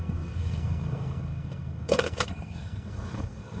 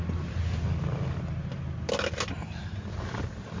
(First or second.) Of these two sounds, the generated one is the first